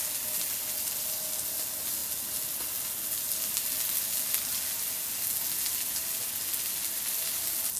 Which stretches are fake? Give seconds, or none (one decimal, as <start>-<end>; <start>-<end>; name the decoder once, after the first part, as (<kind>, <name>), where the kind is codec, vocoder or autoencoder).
none